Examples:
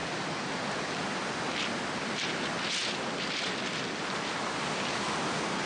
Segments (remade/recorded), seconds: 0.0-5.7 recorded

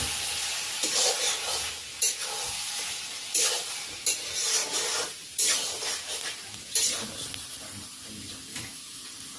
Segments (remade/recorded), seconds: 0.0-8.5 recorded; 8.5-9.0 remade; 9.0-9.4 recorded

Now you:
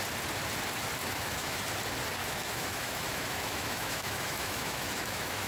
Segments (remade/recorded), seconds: 0.0-1.0 recorded; 1.0-1.6 remade; 1.6-2.2 recorded; 2.2-5.5 remade